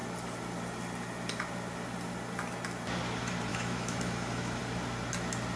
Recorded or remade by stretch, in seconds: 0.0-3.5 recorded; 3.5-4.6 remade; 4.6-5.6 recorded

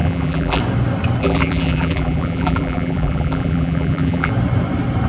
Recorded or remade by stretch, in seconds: 0.0-0.6 remade; 0.6-1.2 recorded; 1.2-4.3 remade; 4.3-5.1 recorded

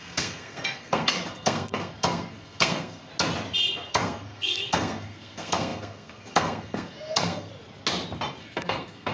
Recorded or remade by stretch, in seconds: 0.0-3.1 remade; 3.1-3.9 recorded; 3.9-7.5 remade; 7.5-8.4 recorded; 8.4-9.1 remade